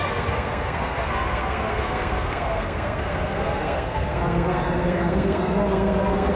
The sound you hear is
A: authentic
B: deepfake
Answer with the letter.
B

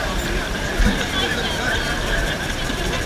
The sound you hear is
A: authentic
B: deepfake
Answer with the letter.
A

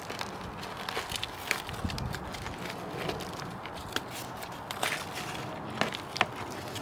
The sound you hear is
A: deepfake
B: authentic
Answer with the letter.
B